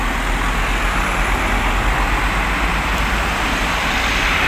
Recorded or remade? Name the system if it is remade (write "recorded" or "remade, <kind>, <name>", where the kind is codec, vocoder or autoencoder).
recorded